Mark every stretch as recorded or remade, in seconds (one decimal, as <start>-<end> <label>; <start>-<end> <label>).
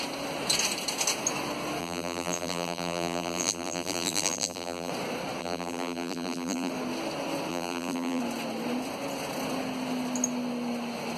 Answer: 0.0-1.8 recorded; 1.8-4.9 remade; 4.9-5.4 recorded; 5.4-6.7 remade; 6.7-7.5 recorded; 7.5-8.2 remade; 8.2-11.2 recorded